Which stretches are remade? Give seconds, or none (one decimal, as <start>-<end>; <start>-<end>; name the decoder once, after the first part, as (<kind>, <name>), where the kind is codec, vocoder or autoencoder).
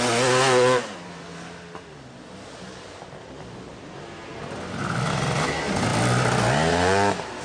none